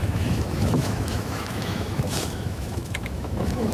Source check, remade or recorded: remade